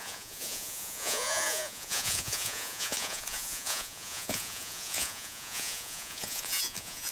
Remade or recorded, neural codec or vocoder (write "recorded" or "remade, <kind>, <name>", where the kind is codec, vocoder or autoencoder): remade, vocoder, Vocos